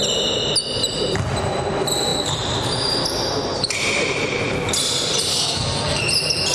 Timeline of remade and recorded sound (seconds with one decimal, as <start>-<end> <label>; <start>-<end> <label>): 0.0-5.3 recorded; 5.3-6.0 remade; 6.0-6.5 recorded